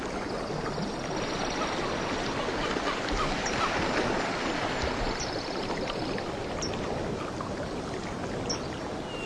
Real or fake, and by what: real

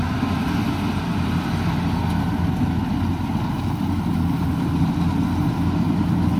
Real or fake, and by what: real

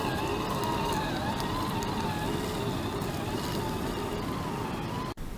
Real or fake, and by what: real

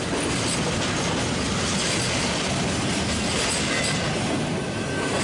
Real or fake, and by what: real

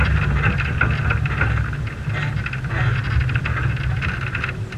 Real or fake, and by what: real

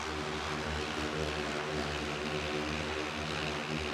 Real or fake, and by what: real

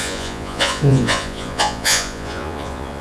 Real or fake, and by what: fake, vocoder, Vocos